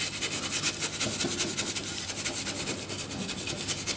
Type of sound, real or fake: real